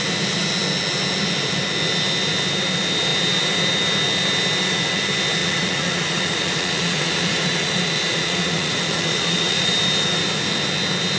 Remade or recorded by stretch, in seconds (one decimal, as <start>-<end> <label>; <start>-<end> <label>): 0.0-5.4 recorded; 5.4-9.7 remade; 9.7-11.2 recorded